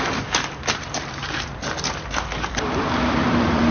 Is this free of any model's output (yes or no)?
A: no